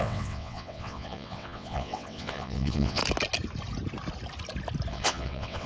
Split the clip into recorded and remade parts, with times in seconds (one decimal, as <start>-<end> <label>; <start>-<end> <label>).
0.0-3.0 remade; 3.0-4.9 recorded; 4.9-5.7 remade